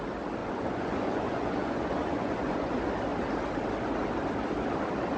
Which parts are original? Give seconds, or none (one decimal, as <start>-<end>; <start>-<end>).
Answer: 0.0-0.4; 2.7-5.2